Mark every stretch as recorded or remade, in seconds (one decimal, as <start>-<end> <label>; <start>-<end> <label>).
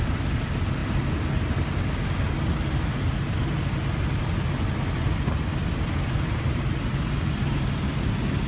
0.0-8.5 recorded